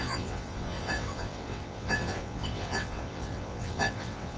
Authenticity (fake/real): fake